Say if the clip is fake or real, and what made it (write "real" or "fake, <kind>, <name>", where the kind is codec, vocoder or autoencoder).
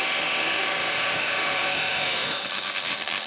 fake, autoencoder, DAC-VAE